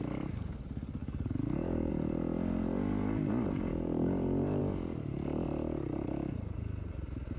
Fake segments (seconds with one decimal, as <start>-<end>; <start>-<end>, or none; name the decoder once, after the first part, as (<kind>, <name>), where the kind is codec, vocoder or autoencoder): 1.0-1.9 (codec, DAC); 3.7-4.6

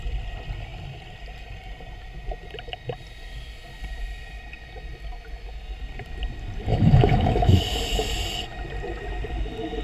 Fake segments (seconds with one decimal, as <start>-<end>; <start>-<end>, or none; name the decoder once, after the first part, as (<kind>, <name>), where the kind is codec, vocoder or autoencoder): 6.7-7.6 (autoencoder, DAC-VAE)

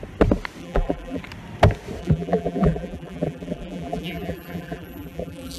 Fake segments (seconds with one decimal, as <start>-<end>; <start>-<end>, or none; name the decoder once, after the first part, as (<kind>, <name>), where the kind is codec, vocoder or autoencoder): 0.6-1.2 (vocoder, BigVGAN v2); 2.0-5.6

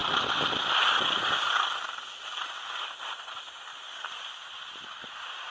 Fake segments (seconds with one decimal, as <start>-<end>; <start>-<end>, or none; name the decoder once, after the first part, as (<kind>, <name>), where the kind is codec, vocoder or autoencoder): 3.3-5.5 (vocoder, BigVGAN v2)

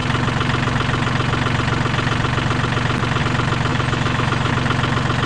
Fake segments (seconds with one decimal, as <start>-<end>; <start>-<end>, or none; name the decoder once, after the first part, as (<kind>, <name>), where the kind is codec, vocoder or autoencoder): 3.7-4.5 (autoencoder, DAC-VAE)

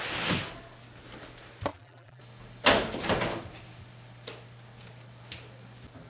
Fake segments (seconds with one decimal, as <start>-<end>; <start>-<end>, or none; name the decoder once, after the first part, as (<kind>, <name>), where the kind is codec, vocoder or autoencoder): 1.7-2.2 (vocoder, BigVGAN v2)

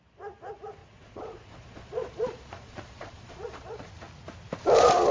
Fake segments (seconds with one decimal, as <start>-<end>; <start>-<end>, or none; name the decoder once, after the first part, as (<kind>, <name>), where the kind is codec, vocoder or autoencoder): 0.8-3.9 (vocoder, Vocos)